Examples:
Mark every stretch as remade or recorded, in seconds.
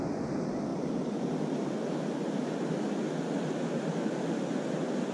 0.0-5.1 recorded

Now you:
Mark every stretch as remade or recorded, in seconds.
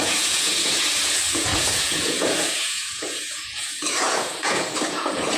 0.0-5.4 remade